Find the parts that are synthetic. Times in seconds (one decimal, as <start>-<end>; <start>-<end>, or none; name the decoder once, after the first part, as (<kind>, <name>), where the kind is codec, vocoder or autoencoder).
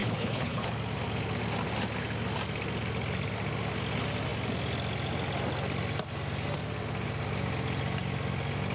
0.0-0.7 (codec, HILCodec)